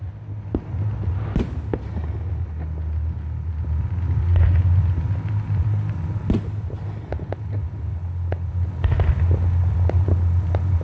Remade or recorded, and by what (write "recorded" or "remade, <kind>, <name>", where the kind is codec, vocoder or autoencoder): recorded